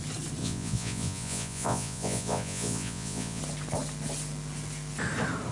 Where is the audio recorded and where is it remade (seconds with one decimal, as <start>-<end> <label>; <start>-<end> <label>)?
0.0-0.4 recorded; 0.4-3.4 remade; 3.4-5.5 recorded